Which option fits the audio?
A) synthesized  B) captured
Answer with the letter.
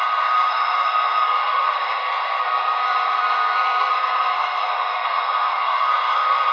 A